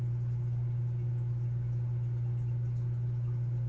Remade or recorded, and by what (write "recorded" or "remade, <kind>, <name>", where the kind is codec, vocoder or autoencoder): recorded